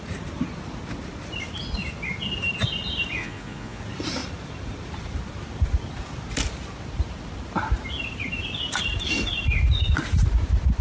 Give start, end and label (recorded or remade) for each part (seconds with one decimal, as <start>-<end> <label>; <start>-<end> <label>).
0.0-3.2 recorded; 3.2-3.8 remade; 3.8-10.8 recorded